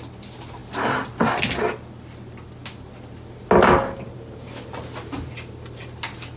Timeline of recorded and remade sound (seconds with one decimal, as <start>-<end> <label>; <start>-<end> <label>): 0.0-6.4 recorded